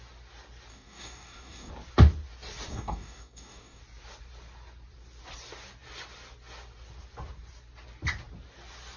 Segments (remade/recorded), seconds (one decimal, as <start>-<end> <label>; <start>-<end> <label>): 0.0-0.7 recorded; 0.7-1.7 remade; 1.7-2.7 recorded; 2.7-3.8 remade; 3.8-9.0 recorded